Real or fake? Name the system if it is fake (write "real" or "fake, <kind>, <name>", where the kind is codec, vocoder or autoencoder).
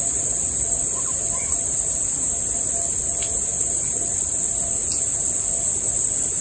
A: fake, vocoder, BigVGAN v2